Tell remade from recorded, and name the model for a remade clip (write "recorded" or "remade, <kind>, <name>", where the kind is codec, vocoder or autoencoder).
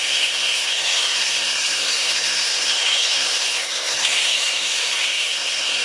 remade, codec, SNAC